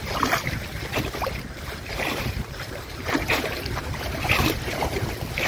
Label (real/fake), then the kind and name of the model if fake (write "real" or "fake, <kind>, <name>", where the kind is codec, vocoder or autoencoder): fake, vocoder, BigVGAN v2